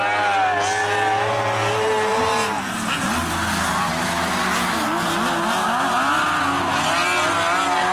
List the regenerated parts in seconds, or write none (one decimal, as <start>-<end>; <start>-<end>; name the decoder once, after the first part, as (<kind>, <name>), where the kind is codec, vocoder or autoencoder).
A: none